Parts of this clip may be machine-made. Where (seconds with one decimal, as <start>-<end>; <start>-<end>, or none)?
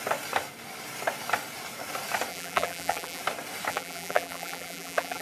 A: 2.3-3.2; 3.7-5.2